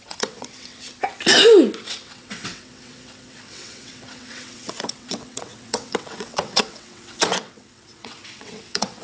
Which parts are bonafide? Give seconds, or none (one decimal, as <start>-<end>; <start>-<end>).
0.9-1.8